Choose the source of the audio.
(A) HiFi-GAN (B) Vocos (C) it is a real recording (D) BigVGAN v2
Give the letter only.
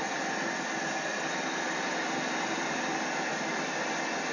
C